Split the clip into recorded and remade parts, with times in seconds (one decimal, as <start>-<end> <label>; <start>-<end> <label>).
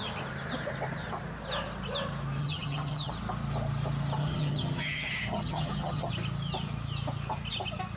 0.0-2.4 recorded; 2.4-3.1 remade; 3.1-4.2 recorded; 4.2-6.1 remade; 6.1-8.0 recorded